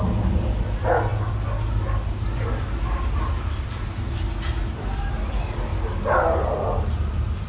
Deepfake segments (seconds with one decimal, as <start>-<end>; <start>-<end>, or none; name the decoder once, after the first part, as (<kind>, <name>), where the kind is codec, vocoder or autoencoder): none